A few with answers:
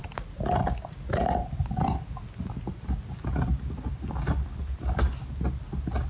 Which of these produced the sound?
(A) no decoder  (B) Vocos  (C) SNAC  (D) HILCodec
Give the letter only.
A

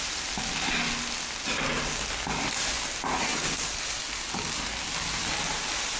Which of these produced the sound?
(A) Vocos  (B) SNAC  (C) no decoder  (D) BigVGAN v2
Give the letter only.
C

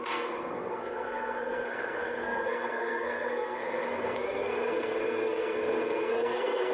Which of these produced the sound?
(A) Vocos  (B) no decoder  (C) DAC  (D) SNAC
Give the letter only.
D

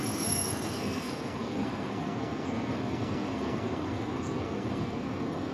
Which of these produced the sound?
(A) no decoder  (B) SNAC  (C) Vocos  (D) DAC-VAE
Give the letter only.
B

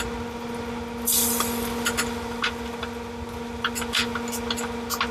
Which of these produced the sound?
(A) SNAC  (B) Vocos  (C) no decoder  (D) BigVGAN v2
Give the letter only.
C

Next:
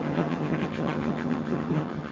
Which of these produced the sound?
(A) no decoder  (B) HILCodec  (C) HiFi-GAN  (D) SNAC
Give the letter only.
C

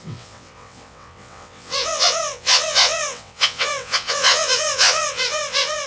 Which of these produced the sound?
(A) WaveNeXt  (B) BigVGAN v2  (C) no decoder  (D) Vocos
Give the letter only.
A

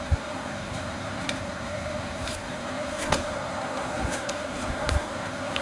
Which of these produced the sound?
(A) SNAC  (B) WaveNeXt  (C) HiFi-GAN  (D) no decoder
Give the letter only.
A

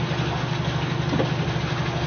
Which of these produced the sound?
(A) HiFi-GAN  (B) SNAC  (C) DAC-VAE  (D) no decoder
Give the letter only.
D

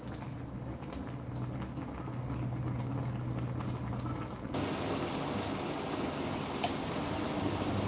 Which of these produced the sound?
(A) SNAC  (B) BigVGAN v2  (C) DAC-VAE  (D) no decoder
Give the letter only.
D